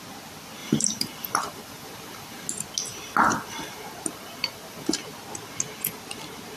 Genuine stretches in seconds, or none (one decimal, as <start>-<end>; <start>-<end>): 0.0-0.6; 2.5-2.9; 4.9-6.6